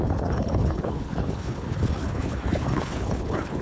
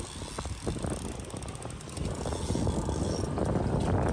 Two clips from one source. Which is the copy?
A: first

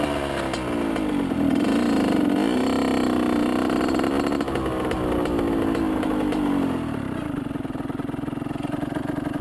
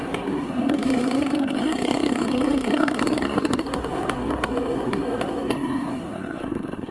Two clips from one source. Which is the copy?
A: second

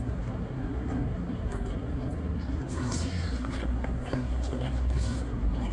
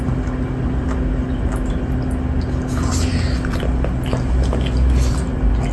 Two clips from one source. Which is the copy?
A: first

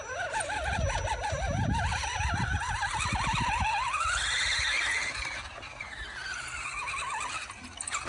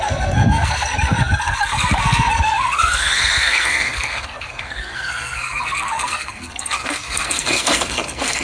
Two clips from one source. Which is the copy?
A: second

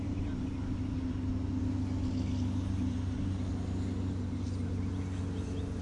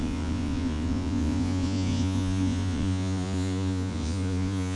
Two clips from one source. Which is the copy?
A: second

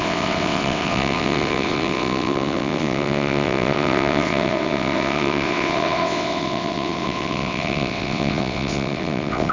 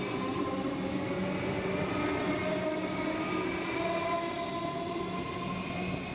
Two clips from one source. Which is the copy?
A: first